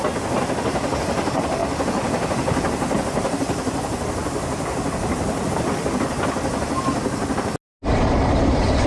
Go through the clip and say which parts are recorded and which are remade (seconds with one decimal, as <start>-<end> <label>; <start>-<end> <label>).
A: 0.0-8.9 recorded